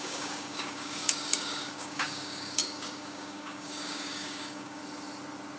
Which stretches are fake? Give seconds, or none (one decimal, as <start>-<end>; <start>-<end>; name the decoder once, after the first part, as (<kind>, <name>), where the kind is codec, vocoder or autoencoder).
0.0-4.8 (codec, DAC)